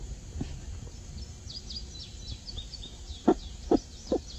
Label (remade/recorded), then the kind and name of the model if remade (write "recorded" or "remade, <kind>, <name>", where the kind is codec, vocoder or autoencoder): recorded